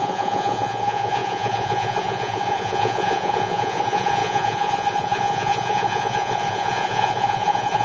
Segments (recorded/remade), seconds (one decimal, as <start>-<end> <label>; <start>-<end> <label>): 0.0-7.8 remade

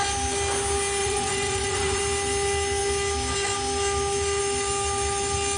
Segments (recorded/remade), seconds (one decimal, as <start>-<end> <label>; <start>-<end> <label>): 0.0-1.0 recorded; 1.0-2.0 remade; 2.0-5.6 recorded

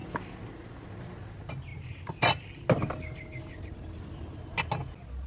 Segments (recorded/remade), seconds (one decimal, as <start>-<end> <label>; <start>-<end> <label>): 0.0-5.3 recorded

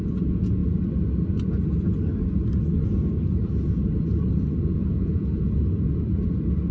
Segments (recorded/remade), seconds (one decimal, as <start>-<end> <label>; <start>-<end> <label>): 0.0-0.6 remade; 0.6-4.6 recorded; 4.6-5.6 remade; 5.6-6.7 recorded